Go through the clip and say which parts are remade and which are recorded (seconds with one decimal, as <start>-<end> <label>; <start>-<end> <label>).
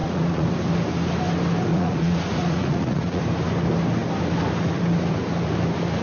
0.0-0.5 remade; 0.5-1.7 recorded; 1.7-3.2 remade; 3.2-6.0 recorded